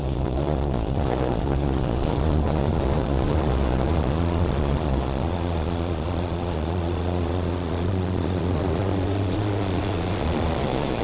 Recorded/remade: remade